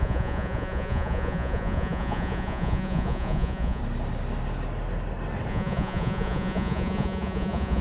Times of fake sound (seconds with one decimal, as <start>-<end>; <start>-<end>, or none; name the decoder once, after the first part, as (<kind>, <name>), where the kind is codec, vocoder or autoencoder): 0.0-3.8 (vocoder, Vocos); 5.5-7.8

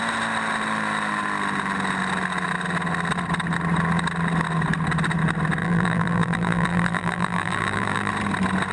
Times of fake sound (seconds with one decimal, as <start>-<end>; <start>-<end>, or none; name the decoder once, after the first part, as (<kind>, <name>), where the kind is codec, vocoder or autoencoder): 5.6-8.1 (vocoder, BigVGAN v2)

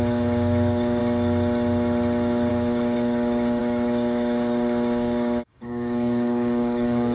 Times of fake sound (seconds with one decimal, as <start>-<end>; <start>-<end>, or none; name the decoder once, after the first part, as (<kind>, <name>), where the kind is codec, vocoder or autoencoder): 0.0-1.0 (codec, DAC); 2.5-7.1

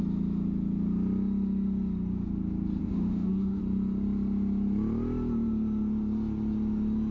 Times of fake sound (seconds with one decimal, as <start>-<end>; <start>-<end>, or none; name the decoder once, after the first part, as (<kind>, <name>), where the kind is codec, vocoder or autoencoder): 2.8-3.6 (autoencoder, DAC-VAE)

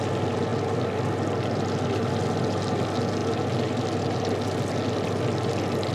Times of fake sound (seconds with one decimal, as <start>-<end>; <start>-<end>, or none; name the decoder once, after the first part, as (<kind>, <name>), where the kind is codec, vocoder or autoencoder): none

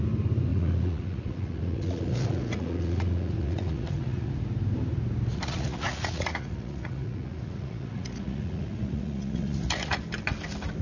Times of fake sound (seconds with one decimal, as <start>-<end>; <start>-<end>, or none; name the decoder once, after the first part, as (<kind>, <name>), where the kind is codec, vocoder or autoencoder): 0.5-4.3 (vocoder, Vocos); 5.3-10.0